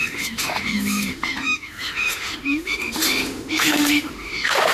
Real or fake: fake